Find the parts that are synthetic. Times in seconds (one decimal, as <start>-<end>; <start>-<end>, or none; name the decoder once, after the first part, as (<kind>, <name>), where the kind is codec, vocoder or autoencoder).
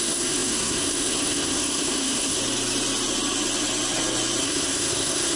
0.0-2.4 (codec, SNAC); 4.4-5.4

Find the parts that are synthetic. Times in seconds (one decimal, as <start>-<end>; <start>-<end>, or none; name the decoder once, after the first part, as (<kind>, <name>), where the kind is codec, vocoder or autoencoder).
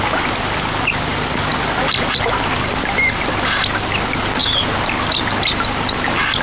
none